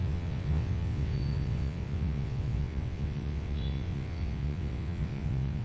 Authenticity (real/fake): fake